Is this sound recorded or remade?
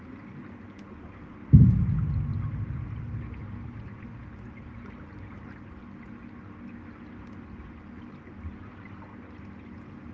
recorded